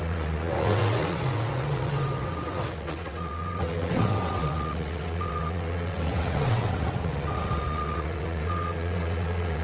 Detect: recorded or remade remade